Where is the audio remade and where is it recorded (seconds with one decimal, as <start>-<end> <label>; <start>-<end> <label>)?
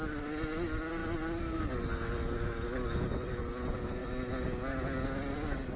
0.0-5.8 recorded